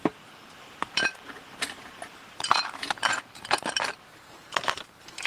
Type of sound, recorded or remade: remade